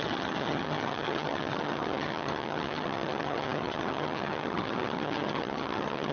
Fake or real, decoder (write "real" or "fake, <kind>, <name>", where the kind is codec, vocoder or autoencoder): fake, vocoder, HiFi-GAN